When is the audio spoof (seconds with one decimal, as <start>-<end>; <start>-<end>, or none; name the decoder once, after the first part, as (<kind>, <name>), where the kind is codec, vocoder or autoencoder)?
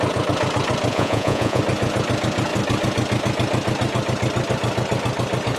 0.9-1.6 (vocoder, Vocos)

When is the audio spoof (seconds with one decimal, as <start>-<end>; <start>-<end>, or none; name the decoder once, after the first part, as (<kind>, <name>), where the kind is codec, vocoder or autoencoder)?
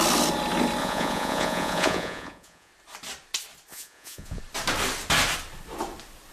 0.8-2.7 (vocoder, Vocos); 3.7-4.4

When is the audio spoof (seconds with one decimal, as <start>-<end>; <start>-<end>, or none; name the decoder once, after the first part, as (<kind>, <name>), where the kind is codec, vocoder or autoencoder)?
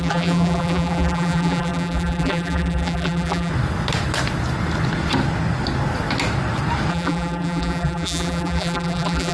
0.0-3.5 (vocoder, BigVGAN v2); 6.9-9.3